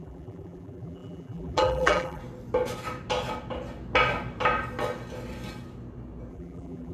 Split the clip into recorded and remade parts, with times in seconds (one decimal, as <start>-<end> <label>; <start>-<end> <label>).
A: 0.0-2.2 remade; 2.2-6.3 recorded; 6.3-6.9 remade